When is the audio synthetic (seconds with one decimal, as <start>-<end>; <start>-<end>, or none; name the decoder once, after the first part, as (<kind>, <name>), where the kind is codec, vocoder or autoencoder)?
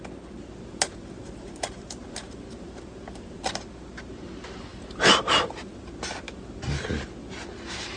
1.2-3.4 (vocoder, BigVGAN v2); 4.7-5.9